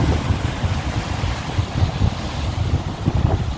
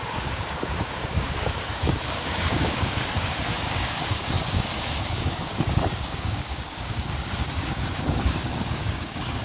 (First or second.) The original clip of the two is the first